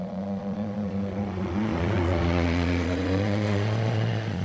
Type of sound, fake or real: fake